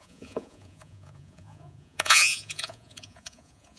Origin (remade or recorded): remade